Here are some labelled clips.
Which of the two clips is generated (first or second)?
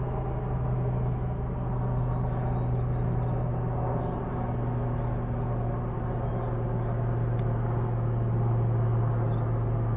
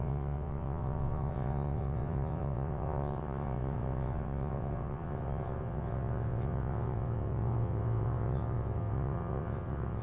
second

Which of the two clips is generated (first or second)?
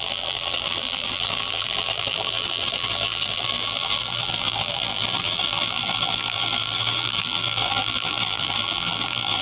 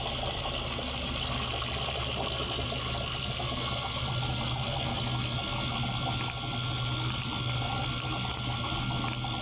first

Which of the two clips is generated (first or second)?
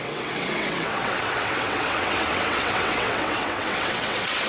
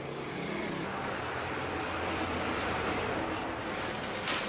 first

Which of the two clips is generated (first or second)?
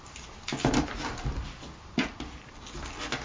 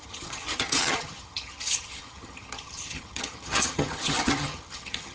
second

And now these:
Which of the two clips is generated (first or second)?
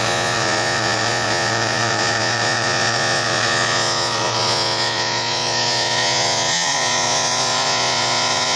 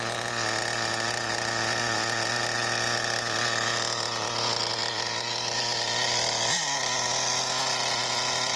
first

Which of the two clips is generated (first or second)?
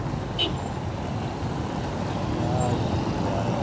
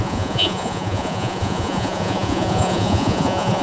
second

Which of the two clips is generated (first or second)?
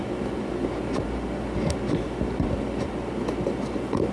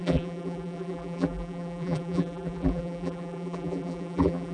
second